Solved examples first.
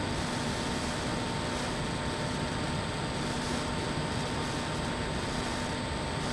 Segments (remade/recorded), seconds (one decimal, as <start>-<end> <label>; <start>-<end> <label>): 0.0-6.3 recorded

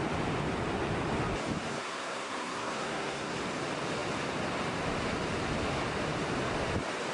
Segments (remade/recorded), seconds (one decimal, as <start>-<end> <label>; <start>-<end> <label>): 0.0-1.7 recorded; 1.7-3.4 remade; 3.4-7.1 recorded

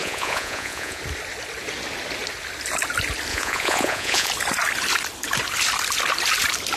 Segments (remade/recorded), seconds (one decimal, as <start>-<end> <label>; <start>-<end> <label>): 0.0-1.0 remade; 1.0-3.3 recorded; 3.3-4.3 remade; 4.3-6.8 recorded

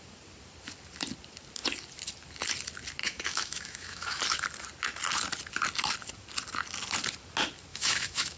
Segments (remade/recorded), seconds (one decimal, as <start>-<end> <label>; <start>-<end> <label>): 0.0-3.0 recorded; 3.0-4.2 remade; 4.2-7.7 recorded; 7.7-8.4 remade

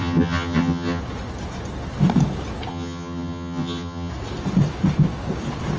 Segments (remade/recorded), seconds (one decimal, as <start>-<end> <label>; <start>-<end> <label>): 0.0-1.0 remade; 1.0-2.7 recorded; 2.7-4.1 remade; 4.1-5.8 recorded